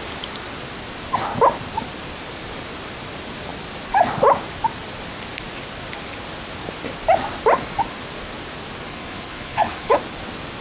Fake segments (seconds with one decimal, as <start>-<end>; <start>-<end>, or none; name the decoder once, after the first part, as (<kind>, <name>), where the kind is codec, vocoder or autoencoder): 8.9-10.0 (codec, HILCodec)